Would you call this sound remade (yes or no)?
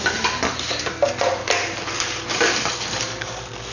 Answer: no